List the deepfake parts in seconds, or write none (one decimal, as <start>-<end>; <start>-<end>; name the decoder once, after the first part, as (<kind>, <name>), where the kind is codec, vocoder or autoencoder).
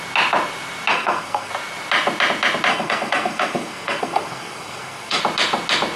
0.9-1.5 (codec, SNAC); 2.7-5.2